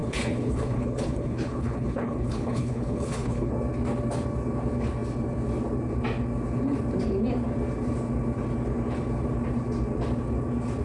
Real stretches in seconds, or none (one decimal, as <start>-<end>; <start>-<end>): 3.5-10.8